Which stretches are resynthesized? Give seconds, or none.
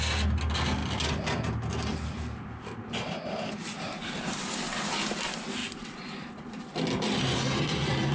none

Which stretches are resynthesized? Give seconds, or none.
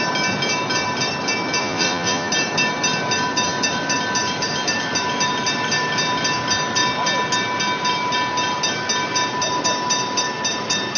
1.6-2.3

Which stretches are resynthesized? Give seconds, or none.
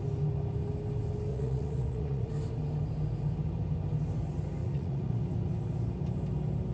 1.3-2.3; 4.6-5.1